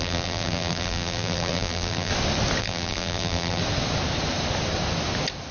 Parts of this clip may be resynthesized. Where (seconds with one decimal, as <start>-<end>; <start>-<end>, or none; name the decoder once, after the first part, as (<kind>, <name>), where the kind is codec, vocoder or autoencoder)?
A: 0.0-2.1 (vocoder, BigVGAN v2); 2.6-3.6